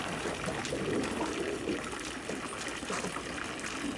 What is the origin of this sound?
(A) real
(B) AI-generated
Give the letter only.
A